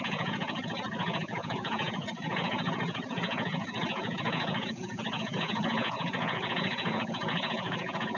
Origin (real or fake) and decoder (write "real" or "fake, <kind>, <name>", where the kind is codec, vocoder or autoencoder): fake, vocoder, Vocos